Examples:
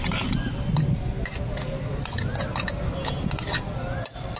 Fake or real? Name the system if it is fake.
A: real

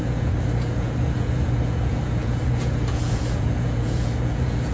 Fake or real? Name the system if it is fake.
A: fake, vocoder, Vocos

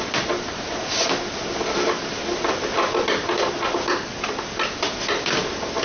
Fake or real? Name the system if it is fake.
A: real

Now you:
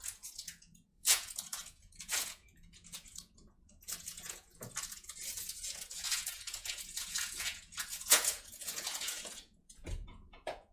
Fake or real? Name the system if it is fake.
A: fake, vocoder, Vocos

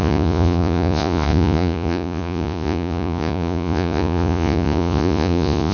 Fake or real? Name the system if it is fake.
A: fake, vocoder, Vocos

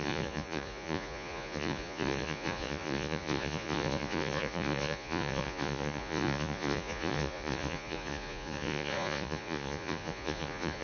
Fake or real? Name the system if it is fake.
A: fake, vocoder, Vocos